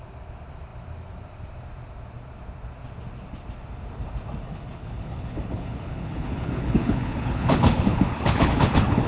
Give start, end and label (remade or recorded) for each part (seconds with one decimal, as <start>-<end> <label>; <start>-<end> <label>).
0.0-4.4 recorded; 4.4-9.1 remade